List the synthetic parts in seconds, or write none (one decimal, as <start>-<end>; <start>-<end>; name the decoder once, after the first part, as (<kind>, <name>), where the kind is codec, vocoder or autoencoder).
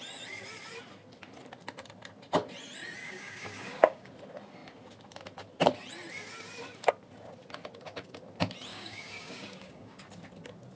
3.0-4.1 (codec, DAC); 8.7-10.0